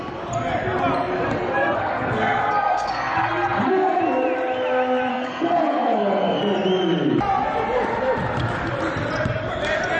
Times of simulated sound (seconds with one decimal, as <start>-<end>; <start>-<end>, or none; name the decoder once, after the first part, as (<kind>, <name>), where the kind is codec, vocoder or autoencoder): 1.6-4.0 (codec, SNAC); 5.1-6.4